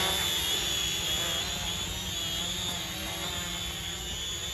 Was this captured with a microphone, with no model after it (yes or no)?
yes